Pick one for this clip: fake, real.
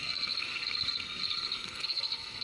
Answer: fake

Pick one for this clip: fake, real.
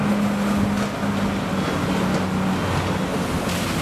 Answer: real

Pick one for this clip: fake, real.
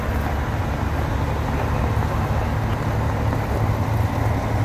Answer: real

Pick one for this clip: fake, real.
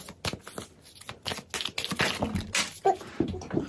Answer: real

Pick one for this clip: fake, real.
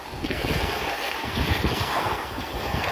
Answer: fake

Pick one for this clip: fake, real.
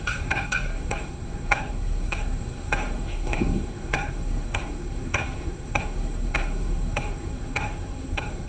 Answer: fake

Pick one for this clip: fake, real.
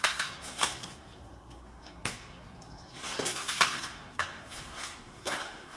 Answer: fake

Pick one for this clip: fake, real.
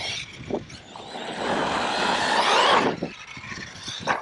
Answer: real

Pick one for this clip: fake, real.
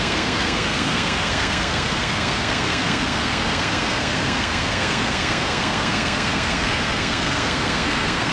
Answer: fake